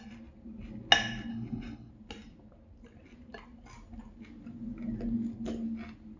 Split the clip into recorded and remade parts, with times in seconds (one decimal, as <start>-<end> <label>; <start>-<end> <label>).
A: 0.0-1.3 recorded; 1.3-1.9 remade; 1.9-6.2 recorded